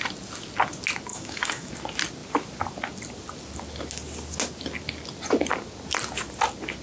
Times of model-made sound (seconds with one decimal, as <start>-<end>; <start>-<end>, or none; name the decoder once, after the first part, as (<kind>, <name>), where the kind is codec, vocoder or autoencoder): 1.1-1.7 (autoencoder, DAC-VAE)